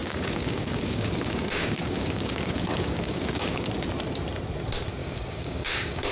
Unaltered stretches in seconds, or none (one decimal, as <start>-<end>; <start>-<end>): 3.7-5.0